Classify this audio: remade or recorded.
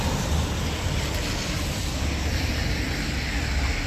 recorded